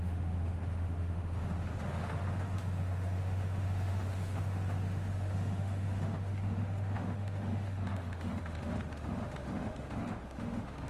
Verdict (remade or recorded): remade